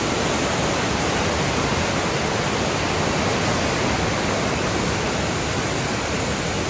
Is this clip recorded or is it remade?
recorded